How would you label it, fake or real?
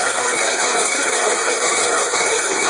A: fake